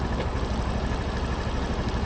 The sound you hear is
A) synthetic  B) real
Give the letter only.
B